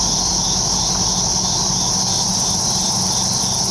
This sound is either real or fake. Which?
real